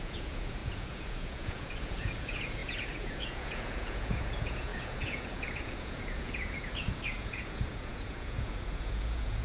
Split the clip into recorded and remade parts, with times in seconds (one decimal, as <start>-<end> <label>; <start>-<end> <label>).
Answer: 0.0-9.4 remade